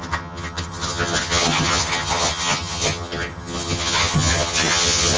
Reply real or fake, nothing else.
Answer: fake